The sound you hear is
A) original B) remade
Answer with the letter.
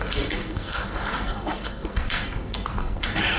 B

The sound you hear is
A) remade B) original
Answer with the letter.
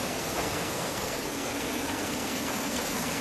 A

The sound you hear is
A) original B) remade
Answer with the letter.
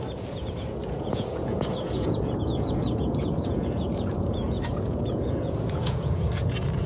B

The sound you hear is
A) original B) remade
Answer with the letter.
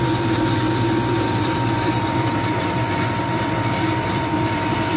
B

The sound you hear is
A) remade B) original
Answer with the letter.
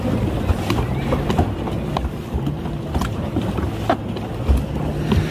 B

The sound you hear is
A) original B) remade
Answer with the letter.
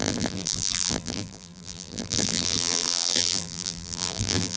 B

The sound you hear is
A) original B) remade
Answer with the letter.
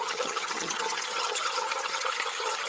B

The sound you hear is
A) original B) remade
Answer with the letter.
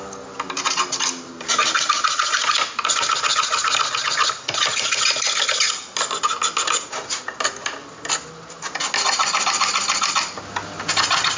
A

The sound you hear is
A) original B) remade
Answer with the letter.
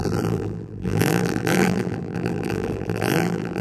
B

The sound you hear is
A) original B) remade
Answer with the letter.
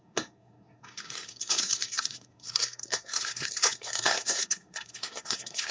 B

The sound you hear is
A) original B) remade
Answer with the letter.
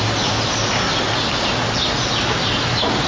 A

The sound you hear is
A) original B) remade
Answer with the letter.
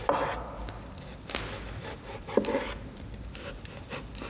A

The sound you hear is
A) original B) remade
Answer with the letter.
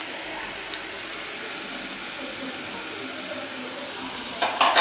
A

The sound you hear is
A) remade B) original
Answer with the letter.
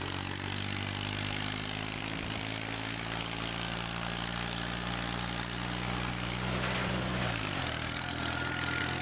B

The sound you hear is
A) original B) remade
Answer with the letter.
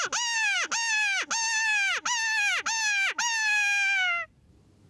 A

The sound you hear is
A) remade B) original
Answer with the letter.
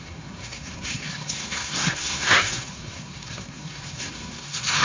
A